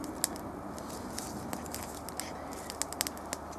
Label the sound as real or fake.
real